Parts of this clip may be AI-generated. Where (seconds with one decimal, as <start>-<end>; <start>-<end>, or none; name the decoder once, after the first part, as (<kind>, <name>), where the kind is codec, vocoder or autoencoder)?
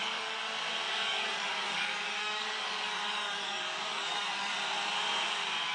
0.0-0.4 (codec, DAC); 0.9-4.5